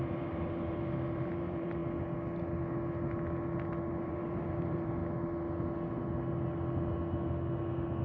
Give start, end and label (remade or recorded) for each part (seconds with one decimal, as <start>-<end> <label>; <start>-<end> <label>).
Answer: 0.0-1.8 remade; 1.8-4.0 recorded; 4.0-5.0 remade; 5.0-8.0 recorded